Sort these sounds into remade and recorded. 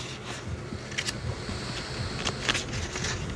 recorded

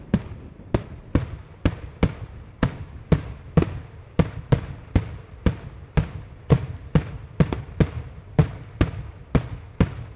recorded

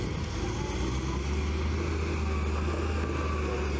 recorded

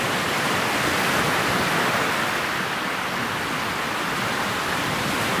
recorded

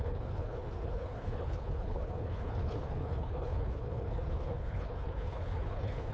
remade